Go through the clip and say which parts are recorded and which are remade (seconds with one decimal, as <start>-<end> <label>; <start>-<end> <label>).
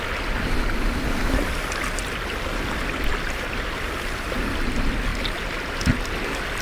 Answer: 0.0-6.6 recorded